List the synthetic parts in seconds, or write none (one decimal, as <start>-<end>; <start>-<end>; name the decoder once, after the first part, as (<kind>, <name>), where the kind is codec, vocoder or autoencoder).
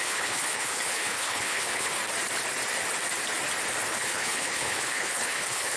0.0-2.0 (codec, HILCodec); 3.9-5.8